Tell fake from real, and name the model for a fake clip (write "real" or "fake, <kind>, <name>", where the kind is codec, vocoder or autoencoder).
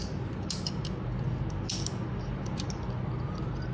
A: real